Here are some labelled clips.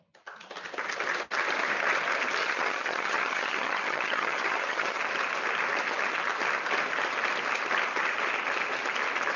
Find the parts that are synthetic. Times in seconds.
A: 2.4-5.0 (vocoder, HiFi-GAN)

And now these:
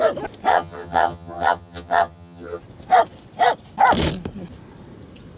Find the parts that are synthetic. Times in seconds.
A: 0.5-2.6 (vocoder, HiFi-GAN)